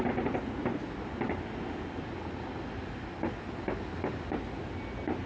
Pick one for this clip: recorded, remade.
recorded